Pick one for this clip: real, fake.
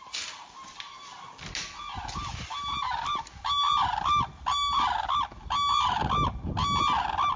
real